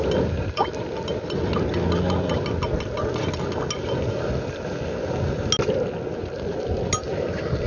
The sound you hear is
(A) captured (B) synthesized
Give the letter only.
A